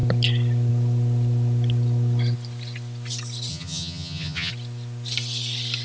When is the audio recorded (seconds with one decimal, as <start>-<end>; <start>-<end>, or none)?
0.0-3.5; 4.5-5.8